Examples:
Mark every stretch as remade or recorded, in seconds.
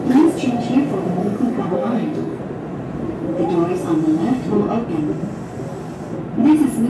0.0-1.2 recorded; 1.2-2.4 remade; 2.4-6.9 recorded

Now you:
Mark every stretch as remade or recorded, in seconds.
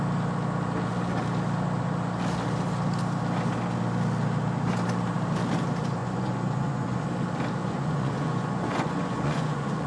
0.0-6.0 recorded; 6.0-7.0 remade; 7.0-7.6 recorded; 7.6-9.9 remade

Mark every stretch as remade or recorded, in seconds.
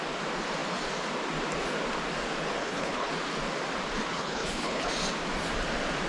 0.0-2.6 recorded; 2.6-3.1 remade; 3.1-4.1 recorded; 4.1-4.9 remade; 4.9-6.1 recorded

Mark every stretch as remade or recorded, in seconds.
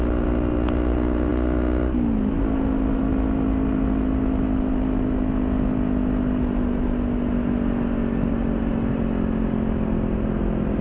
0.0-10.8 recorded